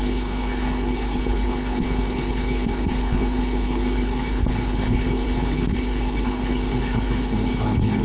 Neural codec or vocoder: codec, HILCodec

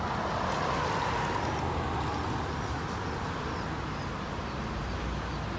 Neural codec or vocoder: none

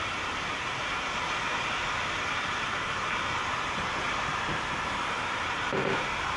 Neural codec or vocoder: vocoder, BigVGAN v2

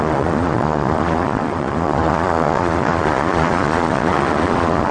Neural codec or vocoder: vocoder, Vocos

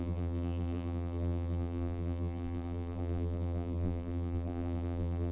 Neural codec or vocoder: vocoder, BigVGAN v2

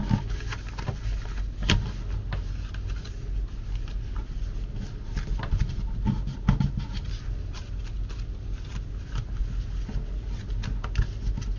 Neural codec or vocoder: none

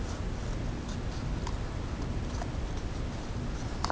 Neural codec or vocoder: none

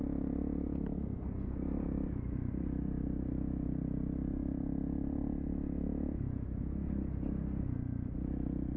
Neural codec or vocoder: none